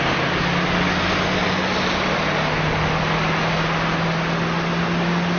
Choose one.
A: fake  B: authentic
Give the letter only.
B